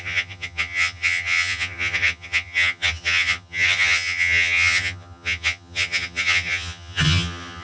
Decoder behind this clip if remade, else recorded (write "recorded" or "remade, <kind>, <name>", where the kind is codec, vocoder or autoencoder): remade, vocoder, HiFi-GAN